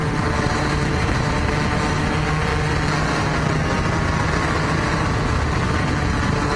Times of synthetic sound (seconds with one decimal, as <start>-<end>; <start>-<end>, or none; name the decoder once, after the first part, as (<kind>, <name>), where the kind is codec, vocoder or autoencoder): 0.0-1.3 (vocoder, BigVGAN v2)